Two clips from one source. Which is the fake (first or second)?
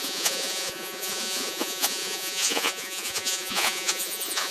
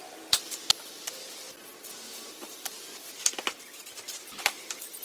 first